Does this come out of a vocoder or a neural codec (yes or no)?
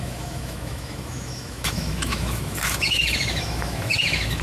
yes